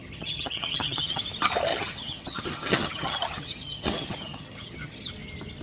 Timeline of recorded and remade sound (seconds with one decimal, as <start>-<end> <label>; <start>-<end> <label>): 0.0-1.2 remade; 1.2-1.7 recorded; 1.7-5.1 remade; 5.1-5.6 recorded